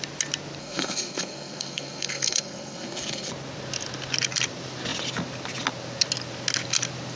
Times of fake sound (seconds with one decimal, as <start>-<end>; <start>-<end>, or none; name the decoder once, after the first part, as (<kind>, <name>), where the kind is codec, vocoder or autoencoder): 0.6-3.3 (codec, SNAC)